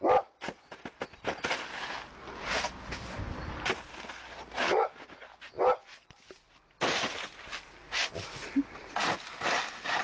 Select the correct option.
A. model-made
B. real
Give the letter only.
B